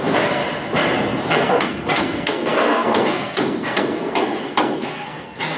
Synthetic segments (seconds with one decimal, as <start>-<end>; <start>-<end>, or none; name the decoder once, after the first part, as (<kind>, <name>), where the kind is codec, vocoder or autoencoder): 0.0-0.4 (codec, SNAC); 1.3-5.6